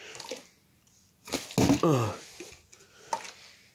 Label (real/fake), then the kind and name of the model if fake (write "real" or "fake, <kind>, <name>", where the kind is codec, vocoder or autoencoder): real